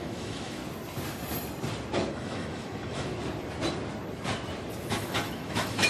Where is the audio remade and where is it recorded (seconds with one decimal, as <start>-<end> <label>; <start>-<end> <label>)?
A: 0.0-0.6 remade; 0.6-2.1 recorded; 2.1-3.1 remade; 3.1-4.9 recorded; 4.9-5.9 remade